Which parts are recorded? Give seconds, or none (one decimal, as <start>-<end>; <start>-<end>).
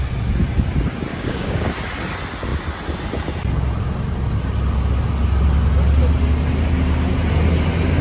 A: 0.0-1.1; 1.7-8.0